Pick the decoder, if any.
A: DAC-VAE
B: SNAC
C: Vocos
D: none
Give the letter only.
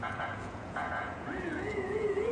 C